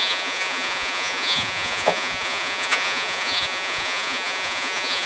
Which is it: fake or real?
fake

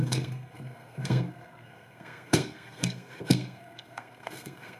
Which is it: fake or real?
fake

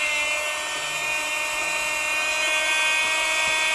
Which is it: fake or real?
real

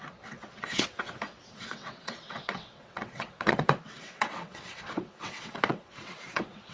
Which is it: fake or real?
fake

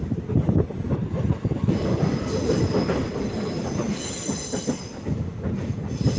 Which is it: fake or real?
real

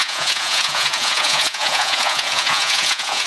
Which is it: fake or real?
fake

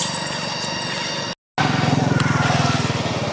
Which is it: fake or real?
real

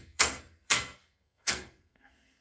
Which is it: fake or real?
fake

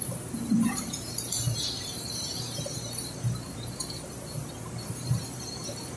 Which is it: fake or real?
fake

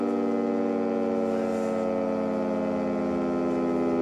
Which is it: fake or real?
real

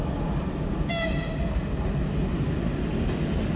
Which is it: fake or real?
real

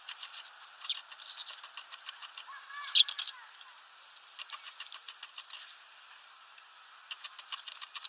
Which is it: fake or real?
real